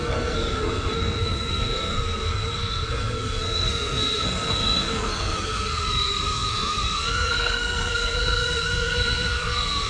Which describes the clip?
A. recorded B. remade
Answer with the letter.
B